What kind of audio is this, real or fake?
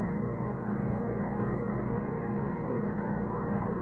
fake